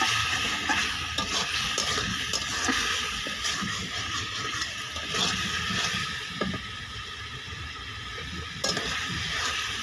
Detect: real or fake real